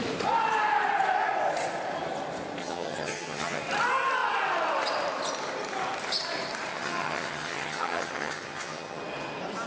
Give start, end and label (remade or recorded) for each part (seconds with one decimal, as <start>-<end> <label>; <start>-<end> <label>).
0.0-2.6 recorded; 2.6-3.6 remade; 3.6-6.7 recorded; 6.7-9.0 remade; 9.0-9.7 recorded